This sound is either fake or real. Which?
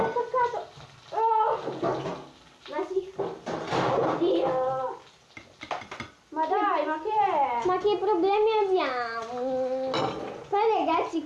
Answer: real